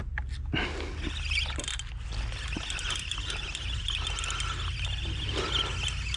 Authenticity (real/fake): real